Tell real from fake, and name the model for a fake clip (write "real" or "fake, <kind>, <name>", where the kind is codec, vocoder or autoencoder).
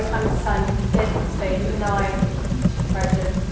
real